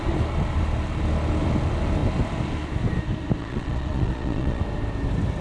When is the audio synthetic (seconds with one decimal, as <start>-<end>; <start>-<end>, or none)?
3.4-4.6